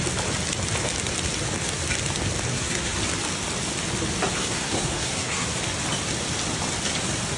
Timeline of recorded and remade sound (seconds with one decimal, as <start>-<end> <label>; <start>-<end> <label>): 0.0-2.5 recorded; 2.5-3.0 remade; 3.0-4.4 recorded; 4.4-5.6 remade; 5.6-7.4 recorded